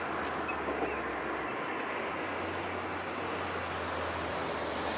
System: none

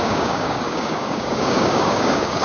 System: codec, DAC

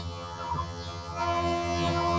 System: vocoder, HiFi-GAN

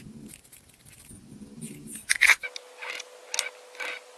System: none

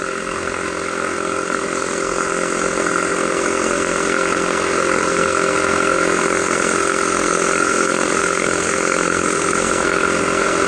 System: codec, SNAC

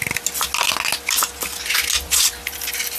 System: none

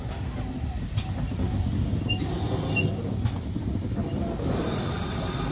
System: none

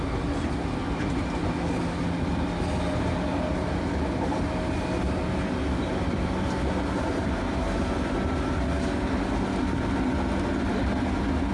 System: none